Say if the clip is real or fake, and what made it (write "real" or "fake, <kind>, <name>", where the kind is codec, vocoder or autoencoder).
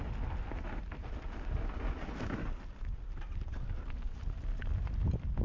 real